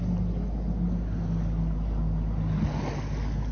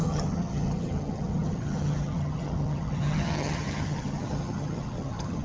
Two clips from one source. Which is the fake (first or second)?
second